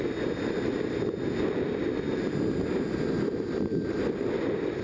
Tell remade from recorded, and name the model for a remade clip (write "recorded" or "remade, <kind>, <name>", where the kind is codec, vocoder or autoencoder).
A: recorded